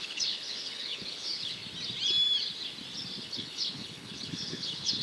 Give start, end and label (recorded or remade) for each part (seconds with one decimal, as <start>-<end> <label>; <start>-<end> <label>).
0.0-1.6 remade; 1.6-3.2 recorded; 3.2-5.0 remade